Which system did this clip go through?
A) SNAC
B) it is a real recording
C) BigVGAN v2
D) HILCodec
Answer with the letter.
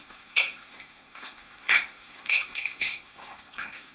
A